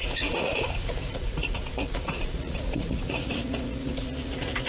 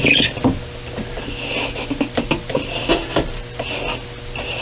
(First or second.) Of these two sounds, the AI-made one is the first